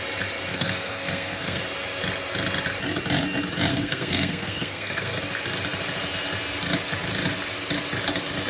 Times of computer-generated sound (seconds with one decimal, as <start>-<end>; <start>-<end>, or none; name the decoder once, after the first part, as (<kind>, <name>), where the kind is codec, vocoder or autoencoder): 0.5-1.6 (codec, SNAC); 3.7-5.2